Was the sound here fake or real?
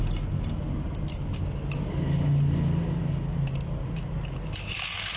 real